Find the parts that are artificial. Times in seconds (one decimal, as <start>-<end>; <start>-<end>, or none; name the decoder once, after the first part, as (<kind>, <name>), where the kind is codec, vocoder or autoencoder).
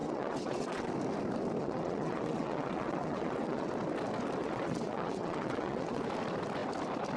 0.0-0.9 (vocoder, WaveNeXt); 1.6-3.7; 4.4-6.0